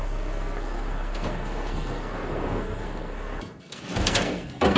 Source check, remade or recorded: remade